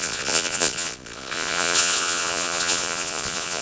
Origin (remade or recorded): remade